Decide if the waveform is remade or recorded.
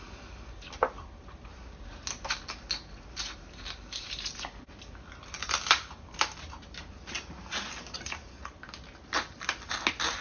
recorded